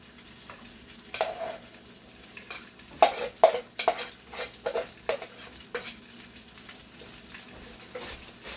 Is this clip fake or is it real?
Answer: real